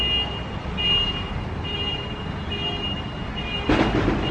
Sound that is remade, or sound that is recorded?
recorded